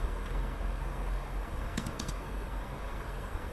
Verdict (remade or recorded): remade